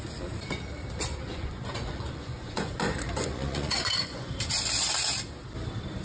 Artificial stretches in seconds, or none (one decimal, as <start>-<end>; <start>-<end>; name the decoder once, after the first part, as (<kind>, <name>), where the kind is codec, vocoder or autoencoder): 1.3-4.3 (vocoder, Vocos)